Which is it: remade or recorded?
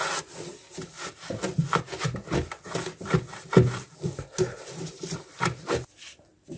recorded